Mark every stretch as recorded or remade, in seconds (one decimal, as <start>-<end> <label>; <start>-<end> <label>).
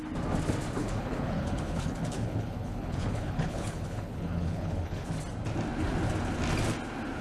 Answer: 0.0-0.8 recorded; 0.8-5.1 remade; 5.1-7.2 recorded